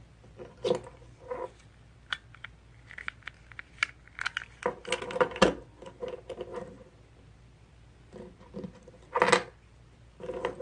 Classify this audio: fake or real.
real